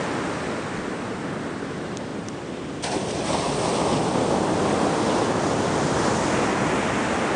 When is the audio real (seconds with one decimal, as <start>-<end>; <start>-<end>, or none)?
0.0-7.4